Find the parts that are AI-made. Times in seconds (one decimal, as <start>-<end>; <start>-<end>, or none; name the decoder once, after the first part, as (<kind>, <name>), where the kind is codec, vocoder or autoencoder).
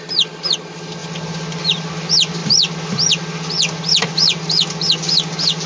none